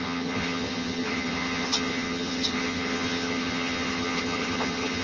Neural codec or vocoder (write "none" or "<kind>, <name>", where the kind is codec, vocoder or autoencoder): vocoder, HiFi-GAN